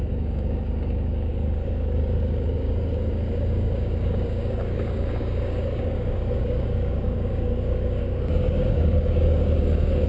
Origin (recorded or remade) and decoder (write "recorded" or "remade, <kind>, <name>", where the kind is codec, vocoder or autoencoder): remade, codec, DAC